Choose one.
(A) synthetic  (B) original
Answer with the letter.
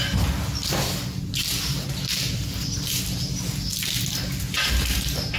B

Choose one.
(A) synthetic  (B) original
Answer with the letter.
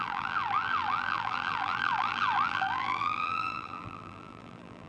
A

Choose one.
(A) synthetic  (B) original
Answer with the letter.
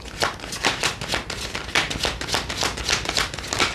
B